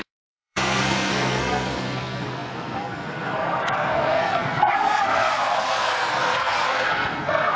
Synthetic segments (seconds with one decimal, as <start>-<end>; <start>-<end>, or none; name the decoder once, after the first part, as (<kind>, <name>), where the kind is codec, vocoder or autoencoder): 0.0-7.6 (codec, SNAC)